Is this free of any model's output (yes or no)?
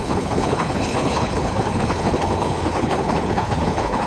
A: no